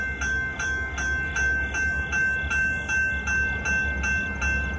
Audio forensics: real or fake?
real